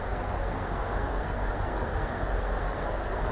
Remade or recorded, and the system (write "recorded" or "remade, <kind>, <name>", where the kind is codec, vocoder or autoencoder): remade, codec, SNAC